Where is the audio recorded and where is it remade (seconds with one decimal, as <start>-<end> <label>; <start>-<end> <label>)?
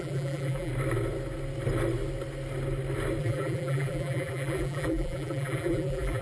0.0-0.7 remade; 0.7-3.2 recorded; 3.2-6.2 remade